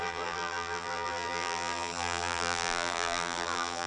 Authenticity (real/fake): fake